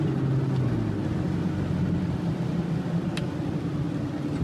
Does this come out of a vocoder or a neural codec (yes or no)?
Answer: no